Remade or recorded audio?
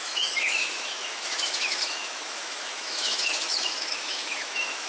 remade